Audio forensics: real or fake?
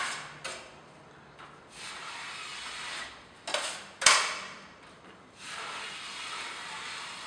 real